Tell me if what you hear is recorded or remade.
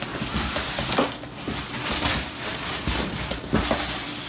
recorded